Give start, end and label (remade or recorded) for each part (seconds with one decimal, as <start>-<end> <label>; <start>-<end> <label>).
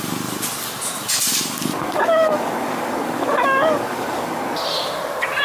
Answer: 0.0-1.3 recorded; 1.3-4.4 remade; 4.4-5.4 recorded